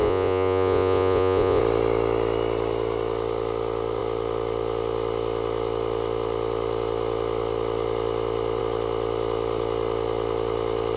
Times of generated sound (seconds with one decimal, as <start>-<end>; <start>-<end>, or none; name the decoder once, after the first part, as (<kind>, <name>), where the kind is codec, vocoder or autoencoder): 0.0-1.6 (vocoder, Vocos)